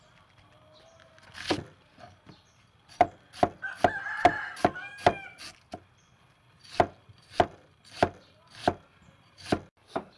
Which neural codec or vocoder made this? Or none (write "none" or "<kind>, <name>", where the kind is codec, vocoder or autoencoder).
none